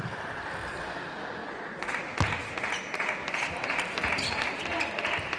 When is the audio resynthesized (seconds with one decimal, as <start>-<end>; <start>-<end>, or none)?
1.4-1.9